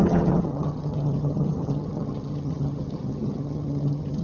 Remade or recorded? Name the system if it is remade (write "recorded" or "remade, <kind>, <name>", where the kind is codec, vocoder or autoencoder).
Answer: remade, vocoder, HiFi-GAN